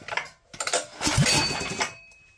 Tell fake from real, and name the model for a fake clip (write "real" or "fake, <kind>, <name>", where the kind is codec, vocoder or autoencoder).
real